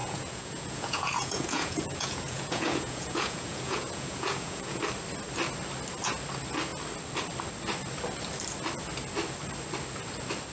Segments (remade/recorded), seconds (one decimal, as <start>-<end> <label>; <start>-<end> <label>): 0.0-4.8 remade; 4.8-10.5 recorded